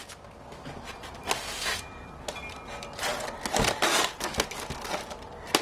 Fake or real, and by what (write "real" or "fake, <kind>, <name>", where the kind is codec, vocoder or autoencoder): real